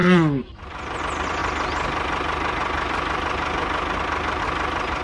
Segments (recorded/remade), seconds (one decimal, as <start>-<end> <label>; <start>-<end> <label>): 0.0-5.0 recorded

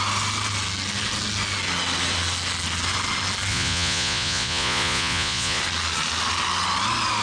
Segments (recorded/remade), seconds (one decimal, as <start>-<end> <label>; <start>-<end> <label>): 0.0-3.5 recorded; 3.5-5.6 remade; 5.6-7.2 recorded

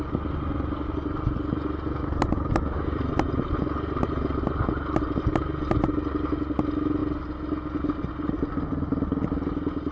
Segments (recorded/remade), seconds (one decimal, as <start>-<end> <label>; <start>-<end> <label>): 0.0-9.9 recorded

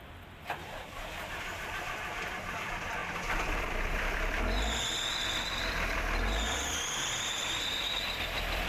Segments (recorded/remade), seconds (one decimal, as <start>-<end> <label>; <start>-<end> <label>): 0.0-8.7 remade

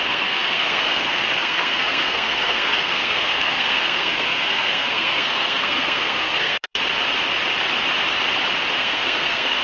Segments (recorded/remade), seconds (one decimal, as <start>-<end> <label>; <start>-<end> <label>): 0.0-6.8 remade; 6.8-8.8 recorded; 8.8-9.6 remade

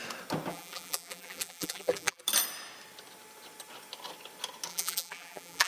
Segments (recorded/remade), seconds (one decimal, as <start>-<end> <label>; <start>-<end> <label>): 0.0-0.5 recorded; 0.5-2.2 remade; 2.2-4.7 recorded; 4.7-5.7 remade

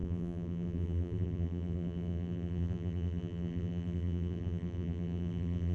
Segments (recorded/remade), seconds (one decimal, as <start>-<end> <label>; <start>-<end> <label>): 0.0-5.7 remade